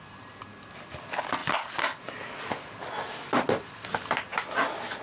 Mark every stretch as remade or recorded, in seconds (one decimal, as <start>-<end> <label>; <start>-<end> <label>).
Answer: 0.0-5.0 recorded